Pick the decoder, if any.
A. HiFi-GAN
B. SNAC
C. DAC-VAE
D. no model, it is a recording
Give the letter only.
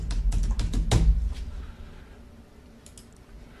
D